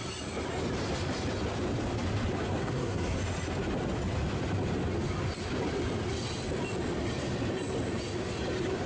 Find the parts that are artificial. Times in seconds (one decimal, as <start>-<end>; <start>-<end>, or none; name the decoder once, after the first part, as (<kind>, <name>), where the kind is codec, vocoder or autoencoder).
2.6-3.2 (codec, SNAC)

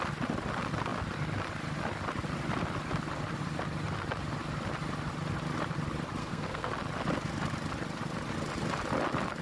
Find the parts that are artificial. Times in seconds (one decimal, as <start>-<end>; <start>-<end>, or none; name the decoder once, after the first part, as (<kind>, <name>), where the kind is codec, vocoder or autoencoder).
6.2-6.7 (codec, SNAC)

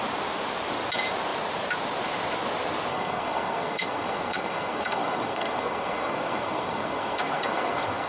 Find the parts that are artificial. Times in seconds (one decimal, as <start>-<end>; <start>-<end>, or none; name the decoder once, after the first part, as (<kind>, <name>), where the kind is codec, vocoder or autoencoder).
2.9-8.1 (codec, SNAC)

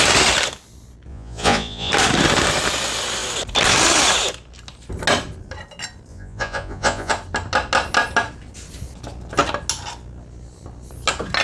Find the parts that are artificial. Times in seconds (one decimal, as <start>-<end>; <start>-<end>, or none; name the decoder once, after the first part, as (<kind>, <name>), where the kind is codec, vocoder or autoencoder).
1.1-1.9 (vocoder, Vocos); 6.1-7.1